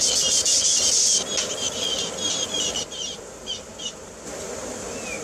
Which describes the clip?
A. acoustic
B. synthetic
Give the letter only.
A